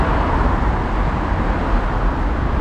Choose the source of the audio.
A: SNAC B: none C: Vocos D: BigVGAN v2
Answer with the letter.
B